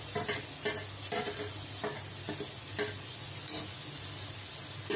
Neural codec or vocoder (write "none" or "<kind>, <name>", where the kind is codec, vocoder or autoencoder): none